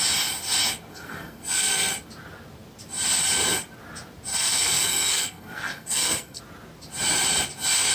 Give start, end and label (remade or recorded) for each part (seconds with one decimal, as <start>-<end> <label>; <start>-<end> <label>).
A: 0.0-0.9 recorded; 0.9-1.9 remade; 1.9-4.3 recorded; 4.3-6.4 remade; 6.4-7.9 recorded